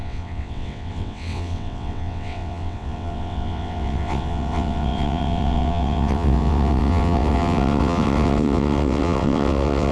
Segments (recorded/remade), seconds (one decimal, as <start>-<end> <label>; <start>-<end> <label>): 0.0-9.9 remade